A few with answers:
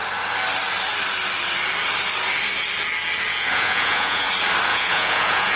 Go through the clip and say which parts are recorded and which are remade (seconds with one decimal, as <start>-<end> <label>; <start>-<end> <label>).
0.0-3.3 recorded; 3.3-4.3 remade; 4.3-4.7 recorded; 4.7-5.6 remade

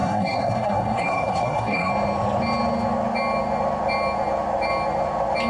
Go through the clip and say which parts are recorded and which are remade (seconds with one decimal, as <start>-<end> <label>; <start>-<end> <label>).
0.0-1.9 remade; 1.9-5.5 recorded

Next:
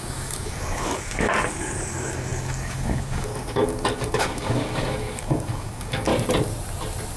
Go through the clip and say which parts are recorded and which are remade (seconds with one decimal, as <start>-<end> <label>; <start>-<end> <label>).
0.0-6.1 remade; 6.1-7.2 recorded